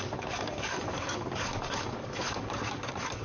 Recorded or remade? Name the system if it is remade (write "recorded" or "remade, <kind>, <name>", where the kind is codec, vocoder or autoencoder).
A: remade, codec, DAC